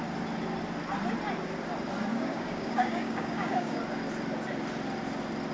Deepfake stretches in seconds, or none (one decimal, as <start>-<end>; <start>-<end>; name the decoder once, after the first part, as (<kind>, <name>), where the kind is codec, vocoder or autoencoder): 2.1-3.8 (codec, DAC)